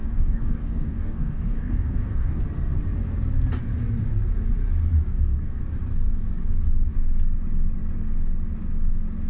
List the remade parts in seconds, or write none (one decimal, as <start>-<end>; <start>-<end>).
0.0-2.4; 5.1-5.6